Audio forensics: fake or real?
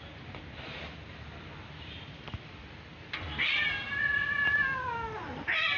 real